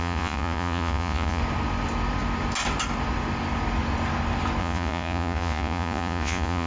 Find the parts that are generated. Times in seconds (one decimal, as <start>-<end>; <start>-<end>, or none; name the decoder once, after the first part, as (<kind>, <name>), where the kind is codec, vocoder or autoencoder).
0.0-1.4 (vocoder, Vocos); 4.6-6.7